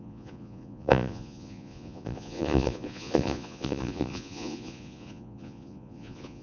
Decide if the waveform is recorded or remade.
remade